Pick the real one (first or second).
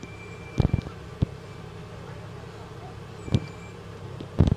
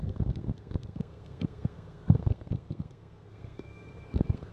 first